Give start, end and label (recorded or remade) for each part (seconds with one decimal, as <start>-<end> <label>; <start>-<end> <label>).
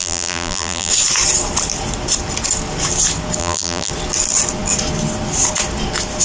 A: 0.0-0.9 remade; 0.9-3.4 recorded; 3.4-3.9 remade; 3.9-6.2 recorded